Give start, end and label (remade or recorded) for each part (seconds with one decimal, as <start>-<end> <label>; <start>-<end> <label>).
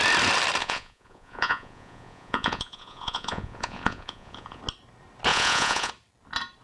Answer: 0.0-0.6 recorded; 0.6-4.6 remade; 4.6-5.3 recorded; 5.3-5.9 remade; 5.9-6.6 recorded